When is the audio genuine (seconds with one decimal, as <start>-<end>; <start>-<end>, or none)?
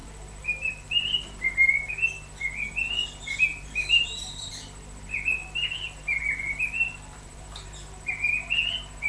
1.9-3.5; 4.5-5.4; 8.1-9.1